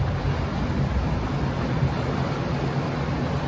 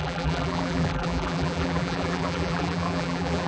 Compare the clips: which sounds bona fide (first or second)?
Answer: first